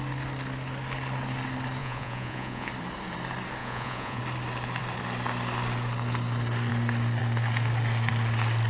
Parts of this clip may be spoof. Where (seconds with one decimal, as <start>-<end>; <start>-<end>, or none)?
1.8-2.7; 3.6-4.2